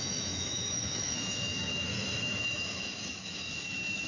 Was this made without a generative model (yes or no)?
no